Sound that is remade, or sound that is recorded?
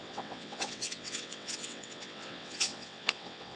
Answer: remade